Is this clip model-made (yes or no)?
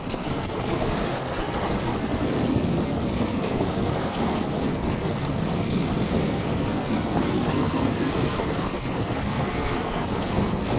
yes